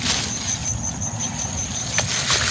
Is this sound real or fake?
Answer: real